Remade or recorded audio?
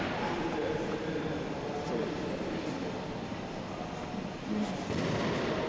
recorded